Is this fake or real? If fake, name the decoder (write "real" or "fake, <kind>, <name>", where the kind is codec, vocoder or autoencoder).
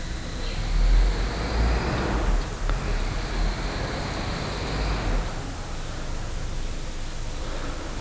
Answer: real